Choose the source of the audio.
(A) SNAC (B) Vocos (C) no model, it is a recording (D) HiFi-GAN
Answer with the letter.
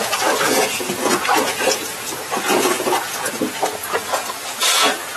B